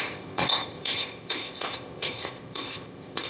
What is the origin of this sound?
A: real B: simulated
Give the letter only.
B